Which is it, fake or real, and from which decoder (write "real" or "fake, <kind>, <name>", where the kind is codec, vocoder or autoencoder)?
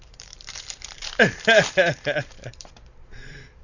fake, vocoder, BigVGAN v2